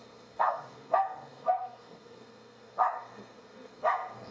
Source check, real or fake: fake